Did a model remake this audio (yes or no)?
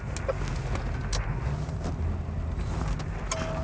no